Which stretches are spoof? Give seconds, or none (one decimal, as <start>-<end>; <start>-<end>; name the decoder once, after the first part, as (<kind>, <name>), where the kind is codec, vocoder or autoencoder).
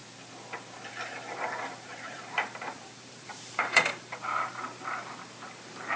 0.9-6.0 (vocoder, BigVGAN v2)